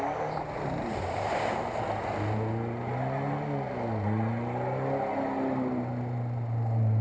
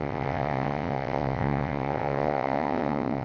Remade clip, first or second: second